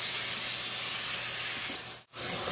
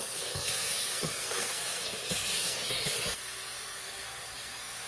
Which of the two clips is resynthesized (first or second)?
second